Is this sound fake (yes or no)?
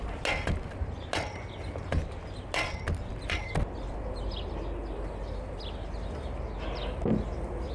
no